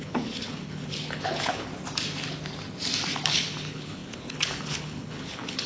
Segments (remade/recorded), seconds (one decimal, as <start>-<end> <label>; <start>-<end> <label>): 0.0-1.7 remade; 1.7-3.3 recorded; 3.3-5.7 remade

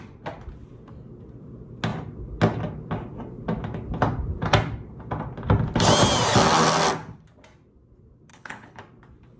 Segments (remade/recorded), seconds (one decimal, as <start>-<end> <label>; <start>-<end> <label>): 0.0-8.3 recorded; 8.3-8.8 remade; 8.8-9.4 recorded

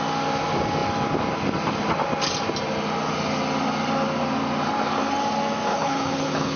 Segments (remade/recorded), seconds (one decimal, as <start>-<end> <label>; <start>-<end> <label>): 0.0-5.7 recorded; 5.7-6.6 remade

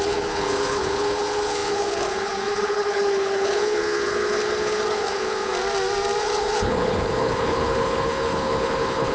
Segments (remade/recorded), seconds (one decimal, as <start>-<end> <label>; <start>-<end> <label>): 0.0-5.5 remade; 5.5-6.2 recorded; 6.2-9.1 remade

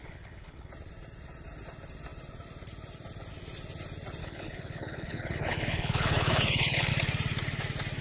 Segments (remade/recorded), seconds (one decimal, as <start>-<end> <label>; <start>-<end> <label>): 0.0-0.7 remade; 0.7-4.2 recorded; 4.2-6.9 remade; 6.9-8.0 recorded

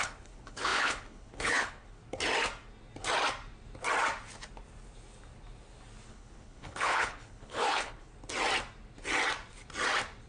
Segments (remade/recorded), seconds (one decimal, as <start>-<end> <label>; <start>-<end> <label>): 0.0-2.0 remade; 2.0-6.1 recorded; 6.1-8.1 remade; 8.1-10.3 recorded